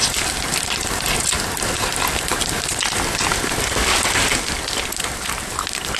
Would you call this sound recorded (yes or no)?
yes